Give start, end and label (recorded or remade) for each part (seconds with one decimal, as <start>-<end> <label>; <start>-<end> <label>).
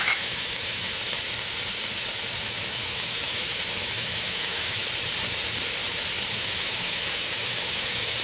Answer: 0.0-1.0 remade; 1.0-2.4 recorded; 2.4-4.8 remade; 4.8-6.3 recorded; 6.3-8.2 remade